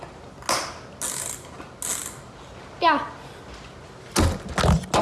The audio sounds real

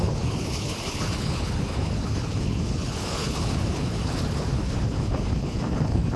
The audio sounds fake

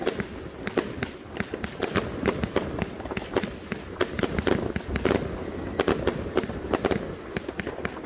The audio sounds real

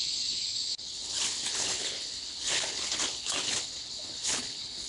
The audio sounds fake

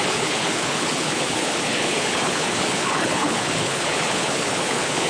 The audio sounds fake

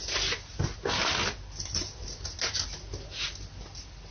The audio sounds real